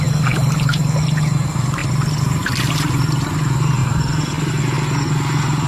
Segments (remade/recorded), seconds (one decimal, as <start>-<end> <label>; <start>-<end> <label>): 0.0-3.8 recorded; 3.8-4.5 remade; 4.5-5.7 recorded